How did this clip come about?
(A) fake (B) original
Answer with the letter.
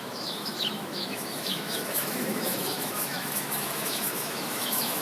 A